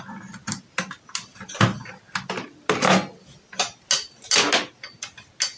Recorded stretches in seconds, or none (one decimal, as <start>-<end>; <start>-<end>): 0.0-5.6